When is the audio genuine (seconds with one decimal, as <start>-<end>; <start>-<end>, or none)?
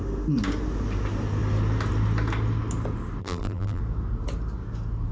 0.0-3.2; 3.8-5.1